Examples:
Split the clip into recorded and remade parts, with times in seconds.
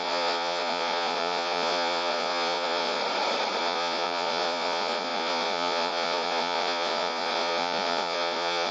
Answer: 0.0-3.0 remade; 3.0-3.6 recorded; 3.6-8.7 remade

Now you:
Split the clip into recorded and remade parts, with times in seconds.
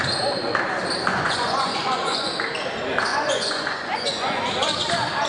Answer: 0.0-1.1 recorded; 1.1-2.3 remade; 2.3-3.1 recorded; 3.1-4.4 remade; 4.4-5.3 recorded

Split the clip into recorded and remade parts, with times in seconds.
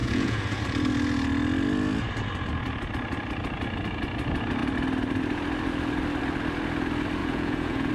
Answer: 0.0-0.6 remade; 0.6-7.2 recorded; 7.2-7.9 remade